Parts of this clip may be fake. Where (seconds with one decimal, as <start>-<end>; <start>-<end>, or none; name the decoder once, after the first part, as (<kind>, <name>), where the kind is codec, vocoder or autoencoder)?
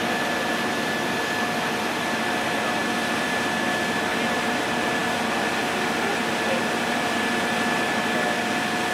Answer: none